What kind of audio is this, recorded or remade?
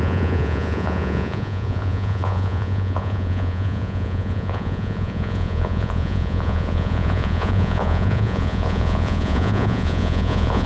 remade